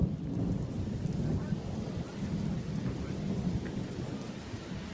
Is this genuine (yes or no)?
yes